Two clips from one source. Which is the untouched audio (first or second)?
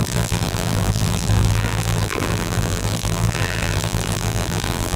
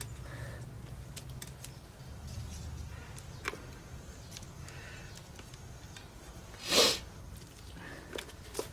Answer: second